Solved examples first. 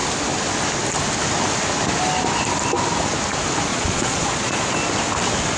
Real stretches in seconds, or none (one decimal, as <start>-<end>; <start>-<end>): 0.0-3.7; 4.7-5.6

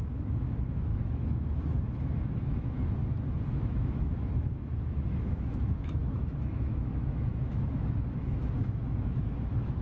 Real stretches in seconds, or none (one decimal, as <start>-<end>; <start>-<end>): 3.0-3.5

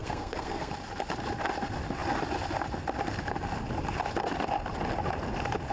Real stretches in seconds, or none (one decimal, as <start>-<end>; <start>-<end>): 0.7-5.7

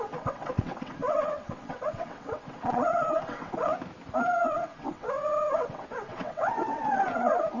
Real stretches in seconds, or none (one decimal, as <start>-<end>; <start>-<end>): 3.7-4.4

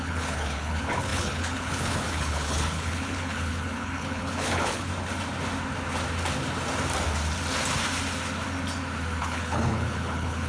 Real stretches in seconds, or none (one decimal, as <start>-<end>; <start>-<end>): 4.9-9.2

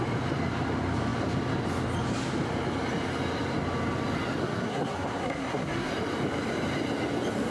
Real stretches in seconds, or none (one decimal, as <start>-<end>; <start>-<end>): 0.0-4.4; 5.9-7.5

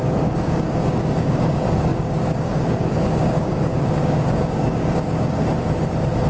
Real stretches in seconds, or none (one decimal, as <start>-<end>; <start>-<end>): 5.4-6.3

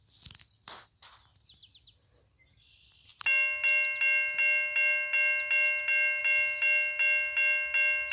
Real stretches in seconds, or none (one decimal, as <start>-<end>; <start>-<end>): 0.0-8.1